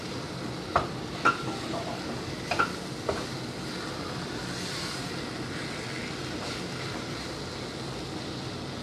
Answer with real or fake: real